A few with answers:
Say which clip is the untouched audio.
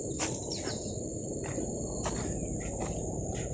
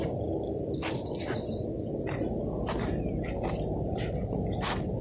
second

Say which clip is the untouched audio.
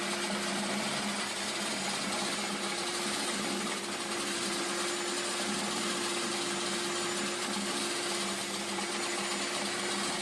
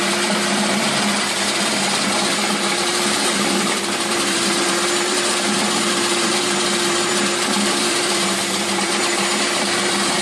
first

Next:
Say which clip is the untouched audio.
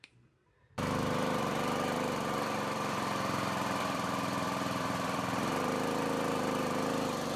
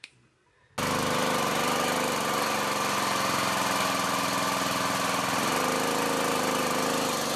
second